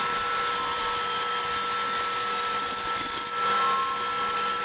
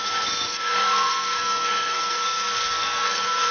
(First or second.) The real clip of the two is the first